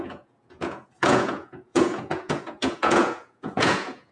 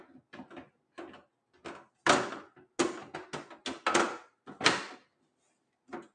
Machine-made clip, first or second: first